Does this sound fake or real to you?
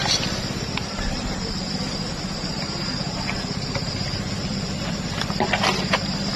fake